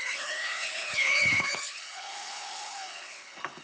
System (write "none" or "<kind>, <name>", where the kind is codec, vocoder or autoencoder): codec, HILCodec